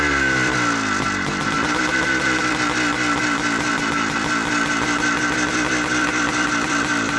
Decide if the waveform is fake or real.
fake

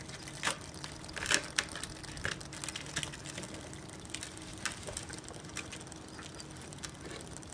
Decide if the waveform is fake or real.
real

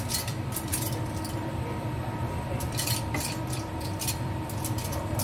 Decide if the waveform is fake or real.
fake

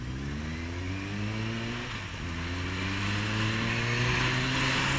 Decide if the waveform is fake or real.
real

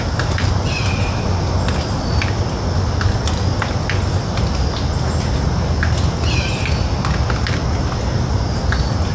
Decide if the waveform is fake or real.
real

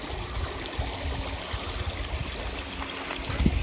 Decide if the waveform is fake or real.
real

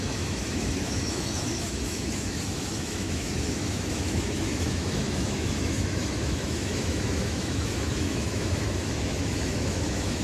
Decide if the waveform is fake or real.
fake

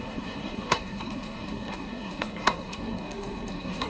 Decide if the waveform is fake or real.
fake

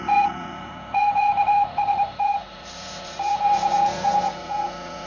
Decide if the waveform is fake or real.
fake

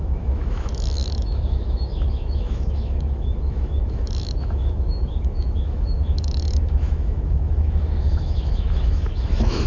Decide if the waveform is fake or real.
fake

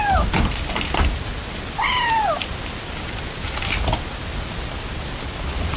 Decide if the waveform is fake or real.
real